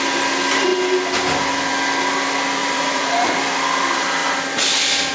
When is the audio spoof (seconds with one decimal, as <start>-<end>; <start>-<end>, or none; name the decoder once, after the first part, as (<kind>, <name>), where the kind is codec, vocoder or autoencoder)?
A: 2.6-3.3 (vocoder, BigVGAN v2)